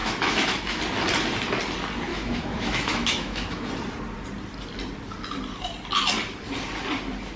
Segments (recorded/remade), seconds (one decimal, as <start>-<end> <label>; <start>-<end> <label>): 0.0-0.8 remade; 0.8-2.1 recorded; 2.1-3.7 remade; 3.7-7.4 recorded

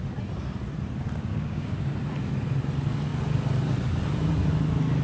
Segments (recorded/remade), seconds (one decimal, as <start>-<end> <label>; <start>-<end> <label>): 0.0-1.3 recorded; 1.3-1.8 remade; 1.8-5.0 recorded